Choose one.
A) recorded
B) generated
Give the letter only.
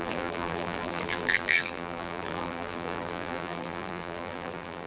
B